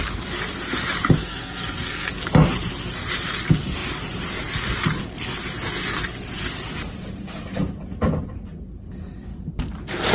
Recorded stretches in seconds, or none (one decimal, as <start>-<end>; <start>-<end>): 0.0-1.2; 2.1-10.1